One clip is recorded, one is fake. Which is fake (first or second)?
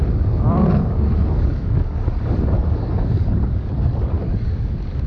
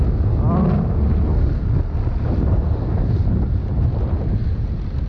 first